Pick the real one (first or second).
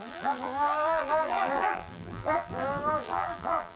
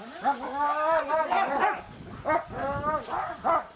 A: second